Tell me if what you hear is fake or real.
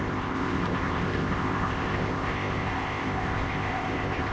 fake